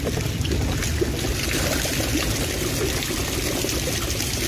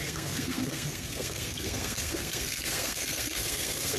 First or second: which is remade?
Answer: second